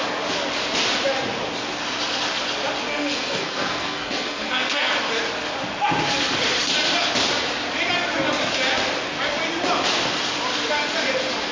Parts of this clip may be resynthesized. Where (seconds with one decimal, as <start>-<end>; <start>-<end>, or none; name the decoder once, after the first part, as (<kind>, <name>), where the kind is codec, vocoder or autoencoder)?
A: 2.9-4.9 (codec, SNAC)